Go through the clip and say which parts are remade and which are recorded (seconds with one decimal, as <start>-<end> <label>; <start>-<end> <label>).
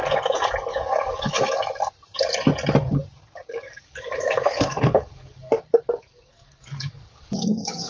0.0-0.7 recorded; 0.7-1.6 remade; 1.6-3.5 recorded; 3.5-5.5 remade; 5.5-6.0 recorded; 6.0-7.9 remade